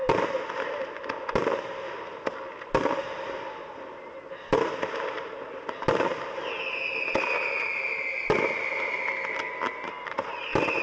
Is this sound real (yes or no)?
yes